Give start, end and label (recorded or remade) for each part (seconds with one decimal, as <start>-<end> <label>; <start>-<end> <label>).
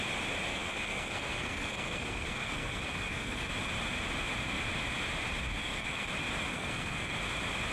0.0-0.5 recorded; 0.5-3.5 remade; 3.5-5.6 recorded; 5.6-6.1 remade; 6.1-6.5 recorded; 6.5-7.2 remade; 7.2-7.7 recorded